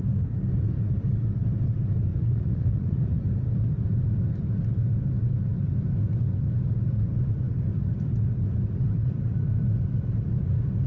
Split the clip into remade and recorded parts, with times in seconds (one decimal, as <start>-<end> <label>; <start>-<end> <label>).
0.0-2.1 recorded; 2.1-3.2 remade; 3.2-10.9 recorded